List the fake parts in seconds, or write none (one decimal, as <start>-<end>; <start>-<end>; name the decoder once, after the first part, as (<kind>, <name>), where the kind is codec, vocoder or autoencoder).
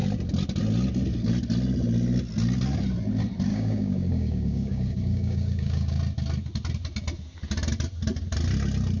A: 3.5-6.0 (codec, DAC)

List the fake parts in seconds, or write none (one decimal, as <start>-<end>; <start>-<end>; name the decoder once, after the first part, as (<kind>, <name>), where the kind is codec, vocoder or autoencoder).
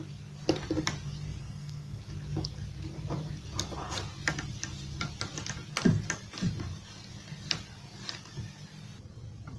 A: 1.4-2.0 (codec, SNAC)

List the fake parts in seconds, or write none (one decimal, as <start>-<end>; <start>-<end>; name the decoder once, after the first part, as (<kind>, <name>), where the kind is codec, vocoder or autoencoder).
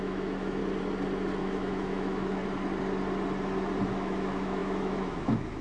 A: 0.0-0.6 (autoencoder, DAC-VAE); 1.4-2.4; 3.8-5.6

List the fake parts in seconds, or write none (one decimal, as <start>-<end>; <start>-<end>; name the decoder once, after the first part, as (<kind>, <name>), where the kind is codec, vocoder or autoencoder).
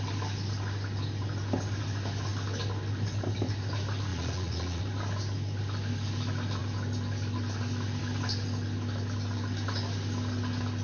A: 4.1-4.8 (vocoder, Vocos)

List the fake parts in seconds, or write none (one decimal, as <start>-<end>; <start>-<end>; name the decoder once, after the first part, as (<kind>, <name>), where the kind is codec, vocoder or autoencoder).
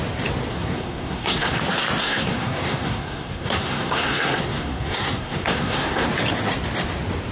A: 0.5-1.6 (codec, SNAC); 2.0-6.1